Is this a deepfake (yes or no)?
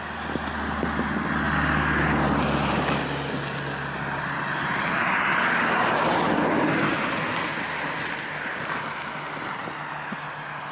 no